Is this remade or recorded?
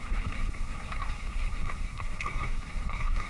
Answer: remade